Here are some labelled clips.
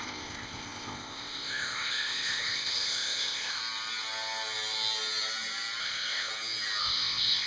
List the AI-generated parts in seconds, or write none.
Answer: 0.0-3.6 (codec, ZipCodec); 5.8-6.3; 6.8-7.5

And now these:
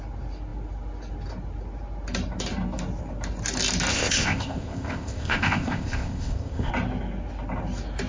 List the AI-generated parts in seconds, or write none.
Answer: 3.9-6.7 (codec, ZipCodec)

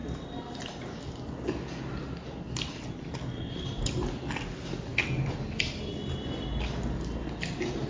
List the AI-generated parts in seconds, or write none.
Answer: none

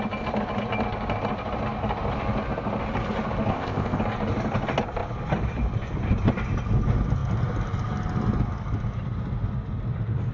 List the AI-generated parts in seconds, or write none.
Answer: 3.5-4.0 (codec, ZipCodec)

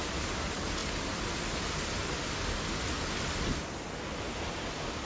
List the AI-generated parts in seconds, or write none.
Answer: none

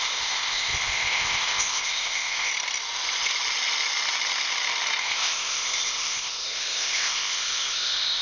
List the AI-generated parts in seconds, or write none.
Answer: 0.0-2.5 (codec, ZipCodec); 5.0-8.2

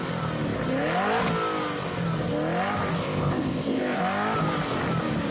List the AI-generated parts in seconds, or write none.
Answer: 3.0-4.0 (codec, ZipCodec)

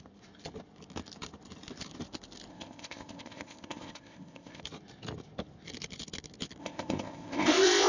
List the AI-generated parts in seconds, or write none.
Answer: 2.5-4.6 (codec, ZipCodec); 6.6-7.9